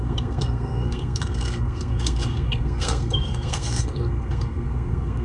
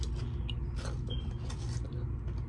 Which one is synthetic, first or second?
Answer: first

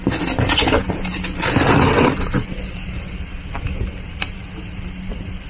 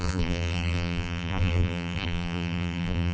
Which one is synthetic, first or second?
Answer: second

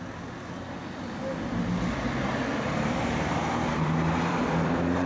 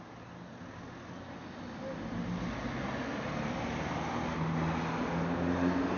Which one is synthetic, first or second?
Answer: first